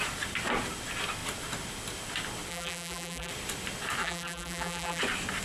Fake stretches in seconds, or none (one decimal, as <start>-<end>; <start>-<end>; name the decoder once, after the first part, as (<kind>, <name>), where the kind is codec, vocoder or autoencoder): 2.5-3.3 (vocoder, BigVGAN v2); 4.0-5.0